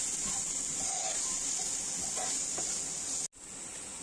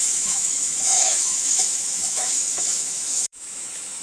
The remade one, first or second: second